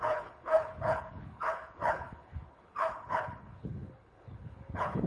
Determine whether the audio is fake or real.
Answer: fake